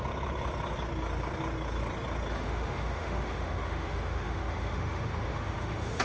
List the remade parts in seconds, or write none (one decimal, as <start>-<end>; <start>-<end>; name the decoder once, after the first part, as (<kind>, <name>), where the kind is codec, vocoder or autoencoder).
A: 2.3-6.0 (autoencoder, DAC-VAE)